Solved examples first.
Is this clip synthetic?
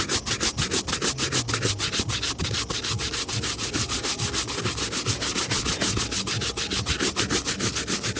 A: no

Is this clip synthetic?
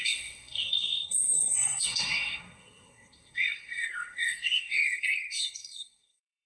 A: yes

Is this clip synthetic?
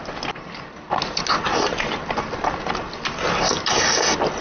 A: no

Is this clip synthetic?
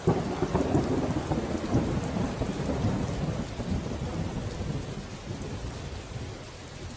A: no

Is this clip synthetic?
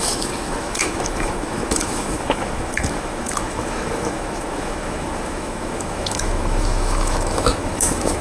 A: yes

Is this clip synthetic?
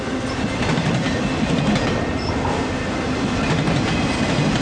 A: no